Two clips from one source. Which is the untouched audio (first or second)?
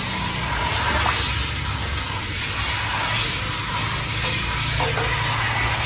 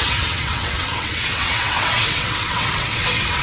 first